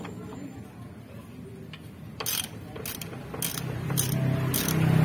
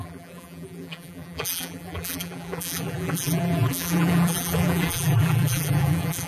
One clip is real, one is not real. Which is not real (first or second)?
second